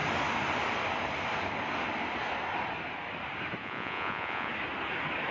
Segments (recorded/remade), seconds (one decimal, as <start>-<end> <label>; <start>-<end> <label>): 0.0-3.6 recorded; 3.6-4.5 remade; 4.5-5.3 recorded